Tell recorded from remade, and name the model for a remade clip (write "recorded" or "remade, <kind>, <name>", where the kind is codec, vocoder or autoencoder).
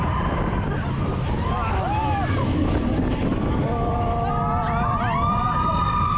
recorded